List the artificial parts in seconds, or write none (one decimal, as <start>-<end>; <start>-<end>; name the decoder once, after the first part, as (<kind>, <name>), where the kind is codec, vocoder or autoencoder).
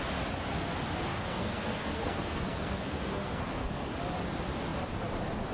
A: 1.1-3.9 (codec, SNAC)